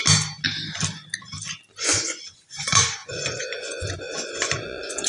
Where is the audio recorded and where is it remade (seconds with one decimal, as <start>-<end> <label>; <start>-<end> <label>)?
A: 0.0-1.8 recorded; 1.8-5.1 remade